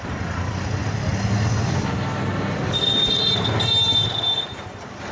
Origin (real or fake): real